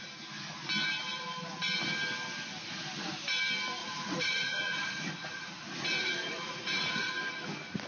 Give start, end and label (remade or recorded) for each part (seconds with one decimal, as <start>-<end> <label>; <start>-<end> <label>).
0.0-3.8 recorded; 3.8-7.1 remade; 7.1-7.9 recorded